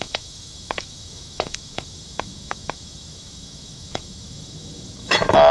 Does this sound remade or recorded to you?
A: remade